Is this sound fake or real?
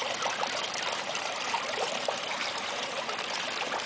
fake